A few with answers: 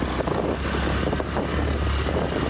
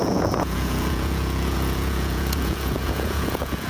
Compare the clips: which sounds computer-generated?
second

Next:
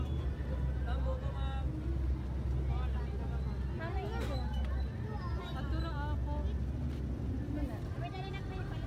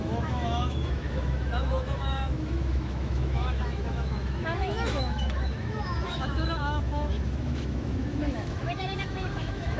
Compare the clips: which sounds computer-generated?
second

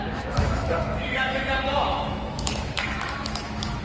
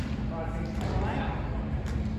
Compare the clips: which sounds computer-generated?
first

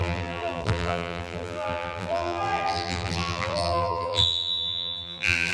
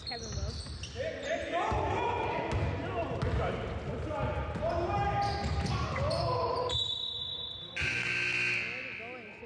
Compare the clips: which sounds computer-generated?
first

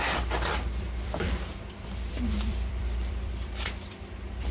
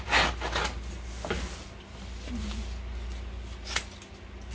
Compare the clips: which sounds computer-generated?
first